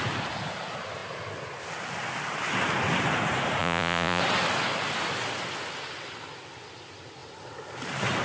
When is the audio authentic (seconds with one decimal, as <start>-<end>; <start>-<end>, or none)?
0.0-3.6; 4.2-8.2